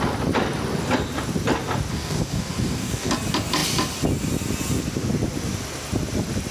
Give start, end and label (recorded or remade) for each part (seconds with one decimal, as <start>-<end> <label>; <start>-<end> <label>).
0.0-1.9 recorded; 1.9-3.1 remade; 3.1-6.5 recorded